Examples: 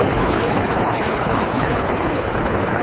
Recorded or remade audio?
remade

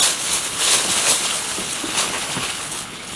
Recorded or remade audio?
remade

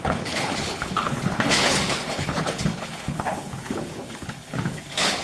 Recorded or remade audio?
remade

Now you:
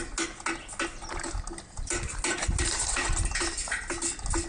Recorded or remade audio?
recorded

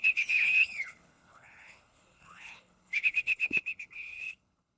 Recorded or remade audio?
remade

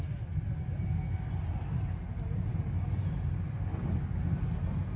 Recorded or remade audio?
recorded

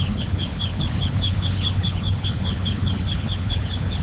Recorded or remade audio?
remade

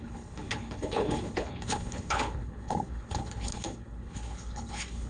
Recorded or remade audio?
remade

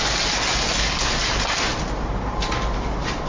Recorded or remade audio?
recorded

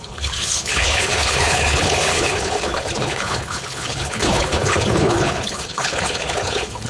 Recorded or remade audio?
remade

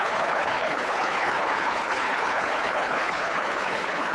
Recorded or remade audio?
remade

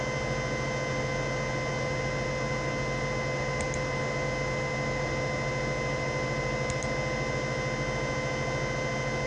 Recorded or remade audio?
recorded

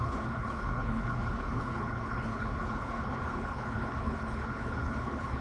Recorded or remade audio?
remade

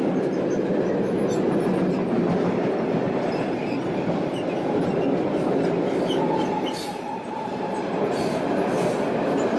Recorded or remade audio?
recorded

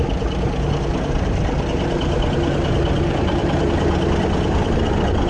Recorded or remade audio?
recorded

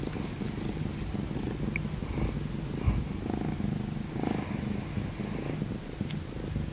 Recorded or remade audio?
recorded